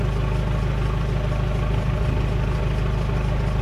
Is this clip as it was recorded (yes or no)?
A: yes